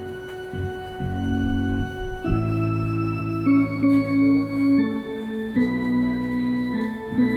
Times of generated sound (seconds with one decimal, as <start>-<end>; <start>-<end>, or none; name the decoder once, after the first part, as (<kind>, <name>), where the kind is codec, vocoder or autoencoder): 0.0-7.4 (autoencoder, DAC-VAE)